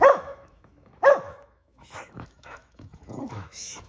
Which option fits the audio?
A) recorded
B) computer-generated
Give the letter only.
B